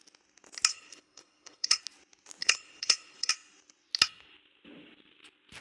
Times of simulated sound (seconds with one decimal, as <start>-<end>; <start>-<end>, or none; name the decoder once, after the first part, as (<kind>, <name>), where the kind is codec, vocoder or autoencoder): 0.7-1.8 (codec, HILCodec); 2.4-3.3

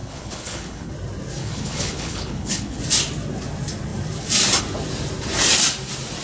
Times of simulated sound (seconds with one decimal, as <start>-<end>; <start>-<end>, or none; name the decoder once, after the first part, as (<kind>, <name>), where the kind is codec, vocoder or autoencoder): 0.0-0.9 (codec, HILCodec); 1.4-2.8

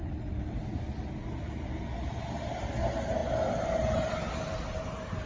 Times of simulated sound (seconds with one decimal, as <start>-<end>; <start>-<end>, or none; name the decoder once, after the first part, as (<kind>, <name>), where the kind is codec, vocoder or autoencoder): none

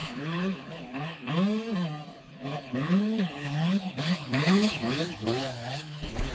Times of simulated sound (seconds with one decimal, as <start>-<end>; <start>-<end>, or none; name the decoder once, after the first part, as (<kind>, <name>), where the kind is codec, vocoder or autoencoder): 0.0-1.3 (codec, HILCodec); 2.1-6.3

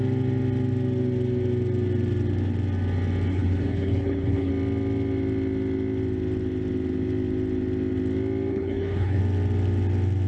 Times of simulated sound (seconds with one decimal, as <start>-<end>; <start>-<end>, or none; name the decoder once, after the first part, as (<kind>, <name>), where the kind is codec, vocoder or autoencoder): 3.3-4.5 (codec, HILCodec); 8.5-9.2

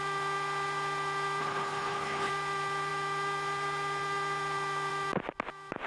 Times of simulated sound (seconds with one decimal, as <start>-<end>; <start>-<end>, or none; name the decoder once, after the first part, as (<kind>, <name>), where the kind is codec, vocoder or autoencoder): 1.4-2.3 (codec, HILCodec)